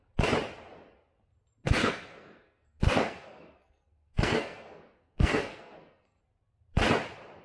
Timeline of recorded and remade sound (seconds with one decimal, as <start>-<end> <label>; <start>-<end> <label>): 0.0-1.8 recorded; 1.8-6.2 remade; 6.2-7.4 recorded

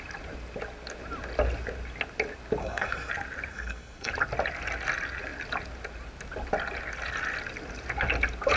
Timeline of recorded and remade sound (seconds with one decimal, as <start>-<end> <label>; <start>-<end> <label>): 0.0-2.6 recorded; 2.6-3.1 remade; 3.1-3.5 recorded; 3.5-4.1 remade; 4.1-8.6 recorded

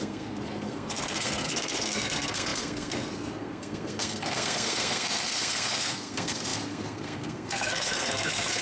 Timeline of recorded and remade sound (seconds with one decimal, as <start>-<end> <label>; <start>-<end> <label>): 0.0-8.6 remade

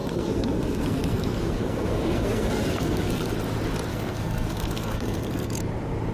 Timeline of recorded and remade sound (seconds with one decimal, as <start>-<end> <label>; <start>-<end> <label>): 0.0-3.2 remade; 3.2-3.9 recorded; 3.9-5.6 remade; 5.6-6.1 recorded

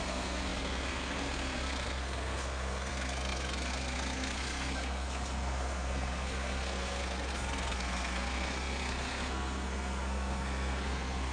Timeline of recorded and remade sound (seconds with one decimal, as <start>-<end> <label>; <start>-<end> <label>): 0.0-11.3 remade